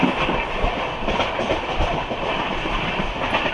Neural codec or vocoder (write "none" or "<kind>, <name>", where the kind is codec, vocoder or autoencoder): vocoder, BigVGAN v2